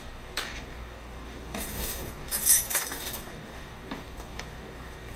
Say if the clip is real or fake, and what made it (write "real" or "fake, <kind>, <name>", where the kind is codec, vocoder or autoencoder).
fake, codec, DAC